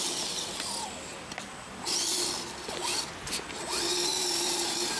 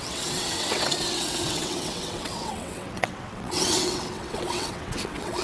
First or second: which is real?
first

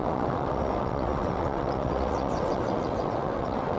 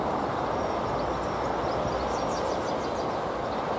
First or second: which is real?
second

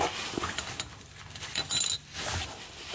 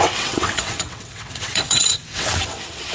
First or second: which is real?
first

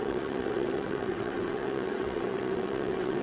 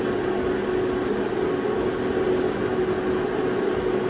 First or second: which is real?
second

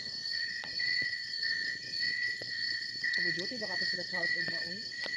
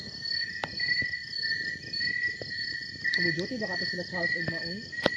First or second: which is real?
second